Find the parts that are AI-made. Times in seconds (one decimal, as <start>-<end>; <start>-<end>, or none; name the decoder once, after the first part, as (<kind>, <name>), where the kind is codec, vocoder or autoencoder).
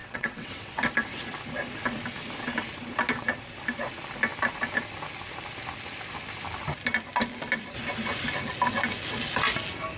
0.0-0.8 (vocoder, WaveNeXt)